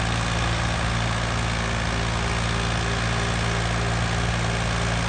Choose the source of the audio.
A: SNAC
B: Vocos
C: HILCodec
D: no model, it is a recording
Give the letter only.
D